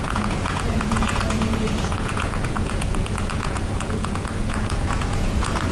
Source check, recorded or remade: remade